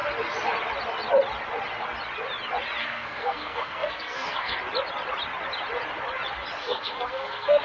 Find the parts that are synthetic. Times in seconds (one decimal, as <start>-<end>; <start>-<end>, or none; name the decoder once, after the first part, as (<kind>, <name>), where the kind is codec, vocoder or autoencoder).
2.8-4.6 (codec, SNAC); 6.6-7.6